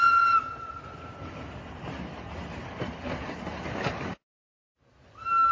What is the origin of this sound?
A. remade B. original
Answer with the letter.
B